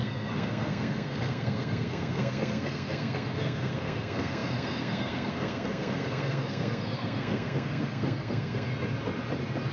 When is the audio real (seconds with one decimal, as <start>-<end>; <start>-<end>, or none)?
8.7-9.7